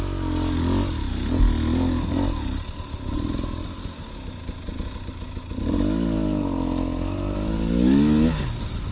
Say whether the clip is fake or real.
real